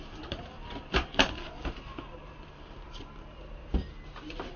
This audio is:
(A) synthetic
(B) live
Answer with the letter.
A